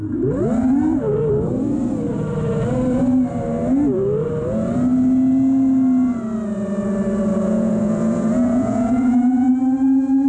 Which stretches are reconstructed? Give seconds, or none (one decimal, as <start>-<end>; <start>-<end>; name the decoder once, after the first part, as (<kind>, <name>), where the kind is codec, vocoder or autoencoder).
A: 7.3-9.5 (vocoder, Vocos)